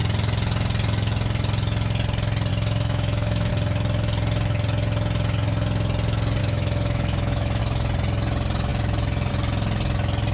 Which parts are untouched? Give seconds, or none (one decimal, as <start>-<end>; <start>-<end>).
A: 0.0-2.5; 3.5-6.4; 7.6-10.3